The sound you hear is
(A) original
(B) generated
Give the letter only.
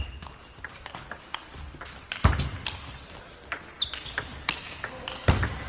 A